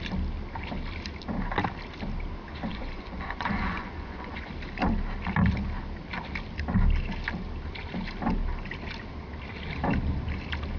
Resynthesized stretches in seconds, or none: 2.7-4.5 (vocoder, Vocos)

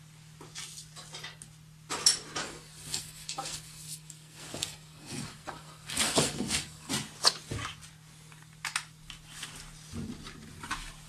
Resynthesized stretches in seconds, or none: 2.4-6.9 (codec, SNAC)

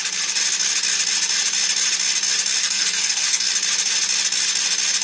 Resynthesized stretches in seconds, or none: 2.6-3.5 (codec, SNAC)

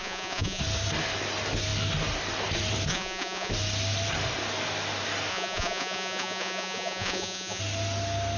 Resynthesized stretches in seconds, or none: 0.0-0.6 (vocoder, Vocos); 2.9-3.5; 5.3-7.6